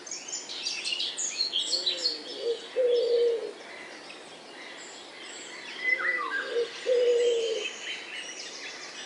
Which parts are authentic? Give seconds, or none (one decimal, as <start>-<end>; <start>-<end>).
0.0-9.1